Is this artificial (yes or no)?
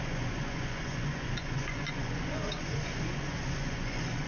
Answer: yes